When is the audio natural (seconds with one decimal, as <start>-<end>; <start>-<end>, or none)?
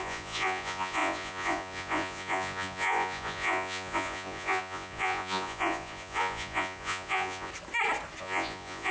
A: 7.5-8.2